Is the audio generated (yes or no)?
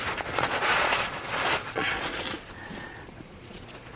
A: yes